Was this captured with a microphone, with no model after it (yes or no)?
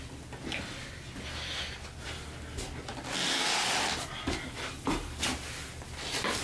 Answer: yes